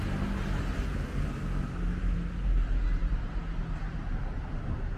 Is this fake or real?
real